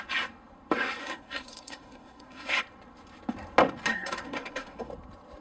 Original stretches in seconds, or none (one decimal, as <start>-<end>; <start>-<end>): 0.0-1.0; 2.6-3.9; 4.9-5.4